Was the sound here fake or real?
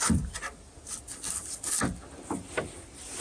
real